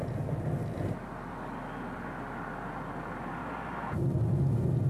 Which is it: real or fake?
real